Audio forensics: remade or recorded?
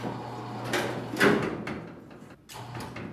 recorded